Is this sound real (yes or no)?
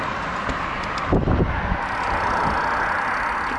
yes